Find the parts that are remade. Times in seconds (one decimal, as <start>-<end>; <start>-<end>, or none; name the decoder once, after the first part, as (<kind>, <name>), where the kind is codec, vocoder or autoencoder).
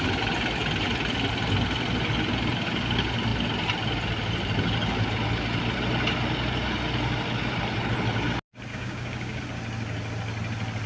8.7-9.4 (codec, DAC)